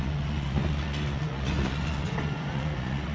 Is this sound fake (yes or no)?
yes